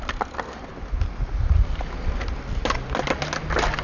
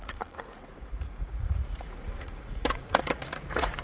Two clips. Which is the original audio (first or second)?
first